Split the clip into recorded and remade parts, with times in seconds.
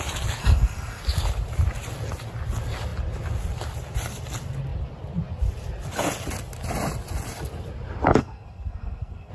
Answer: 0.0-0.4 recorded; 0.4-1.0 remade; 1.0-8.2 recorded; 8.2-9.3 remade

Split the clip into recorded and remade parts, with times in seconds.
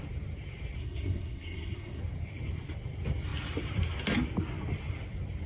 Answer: 0.0-0.8 recorded; 0.8-2.0 remade; 2.0-5.5 recorded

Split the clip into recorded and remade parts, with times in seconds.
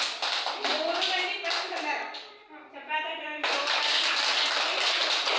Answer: 0.0-5.4 recorded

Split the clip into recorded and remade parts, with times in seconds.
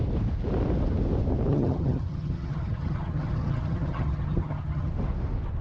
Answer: 0.0-1.5 recorded; 1.5-4.9 remade; 4.9-5.6 recorded